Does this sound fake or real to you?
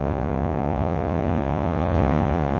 fake